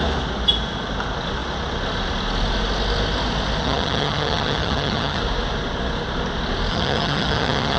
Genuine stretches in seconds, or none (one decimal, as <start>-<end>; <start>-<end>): 0.0-3.6; 5.2-6.7